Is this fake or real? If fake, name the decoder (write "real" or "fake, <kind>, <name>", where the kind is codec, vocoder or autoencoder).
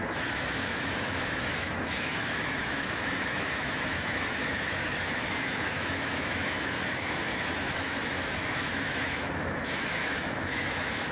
fake, autoencoder, DAC-VAE